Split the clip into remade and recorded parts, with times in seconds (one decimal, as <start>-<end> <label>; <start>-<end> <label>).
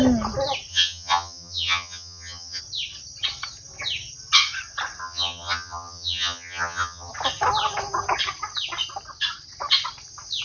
0.0-0.7 recorded; 0.7-2.6 remade; 2.6-5.0 recorded; 5.0-7.1 remade; 7.1-10.4 recorded